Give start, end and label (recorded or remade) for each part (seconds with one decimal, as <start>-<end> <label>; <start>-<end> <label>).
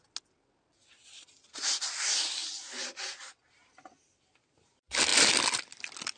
0.0-6.2 recorded